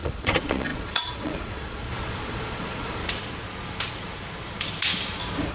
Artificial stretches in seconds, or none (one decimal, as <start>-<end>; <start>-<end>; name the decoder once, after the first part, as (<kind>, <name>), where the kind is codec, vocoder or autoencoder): 0.0-3.0 (vocoder, Vocos)